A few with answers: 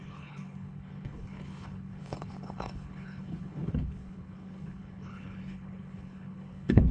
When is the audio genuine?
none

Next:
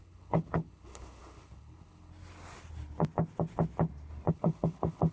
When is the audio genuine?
2.1-4.3

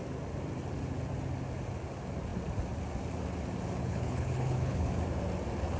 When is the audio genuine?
0.0-3.8; 4.9-5.8

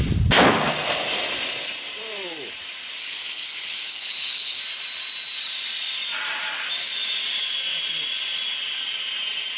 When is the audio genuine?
0.0-3.0; 4.6-9.6

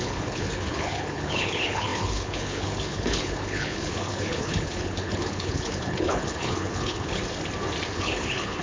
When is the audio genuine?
7.2-7.9

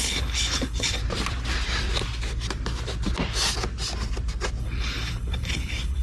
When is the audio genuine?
1.0-4.6